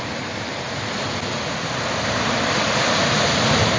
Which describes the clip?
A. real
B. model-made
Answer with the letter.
A